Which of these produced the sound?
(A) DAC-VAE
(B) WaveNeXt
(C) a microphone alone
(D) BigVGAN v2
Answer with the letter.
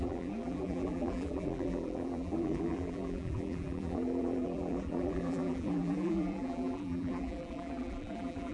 D